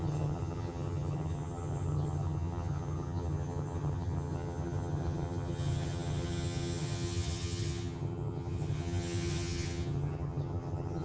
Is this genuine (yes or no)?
no